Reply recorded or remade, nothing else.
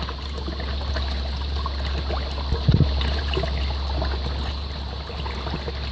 recorded